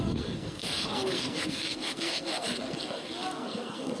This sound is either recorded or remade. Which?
remade